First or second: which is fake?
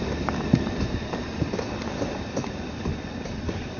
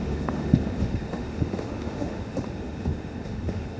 second